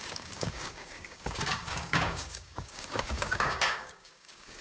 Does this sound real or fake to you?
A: fake